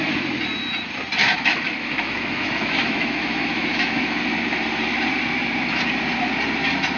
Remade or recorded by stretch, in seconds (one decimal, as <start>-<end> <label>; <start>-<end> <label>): 0.0-1.2 recorded; 1.2-4.2 remade; 4.2-7.0 recorded